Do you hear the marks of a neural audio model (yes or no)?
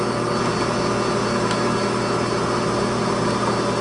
no